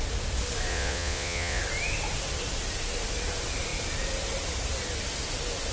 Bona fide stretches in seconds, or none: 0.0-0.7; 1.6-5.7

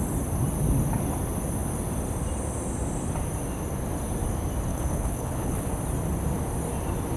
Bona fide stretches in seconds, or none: 0.0-4.7; 5.7-7.2

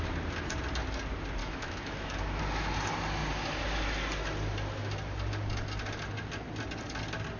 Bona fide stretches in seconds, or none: 0.0-1.4; 2.4-7.4

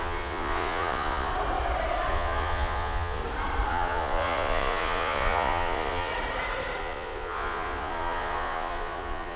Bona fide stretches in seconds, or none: 1.3-2.1; 3.2-3.7; 6.1-6.8

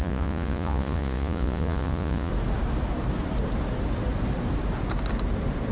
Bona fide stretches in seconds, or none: 2.3-5.7

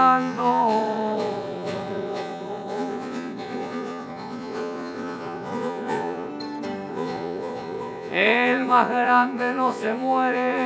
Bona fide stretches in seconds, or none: 6.3-6.9

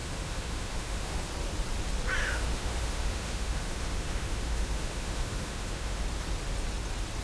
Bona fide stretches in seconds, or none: 1.2-2.2; 6.0-7.2

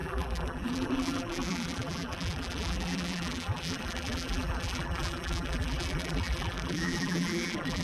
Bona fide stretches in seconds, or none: none